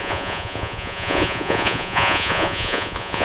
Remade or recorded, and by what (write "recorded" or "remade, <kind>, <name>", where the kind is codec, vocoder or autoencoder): remade, vocoder, Vocos